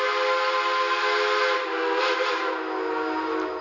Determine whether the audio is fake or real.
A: real